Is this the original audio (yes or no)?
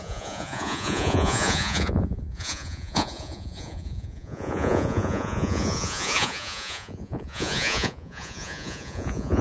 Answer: no